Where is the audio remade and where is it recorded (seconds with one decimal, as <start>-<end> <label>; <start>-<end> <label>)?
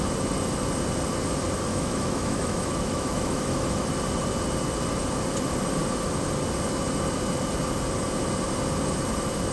0.0-1.7 recorded; 1.7-3.9 remade; 3.9-9.5 recorded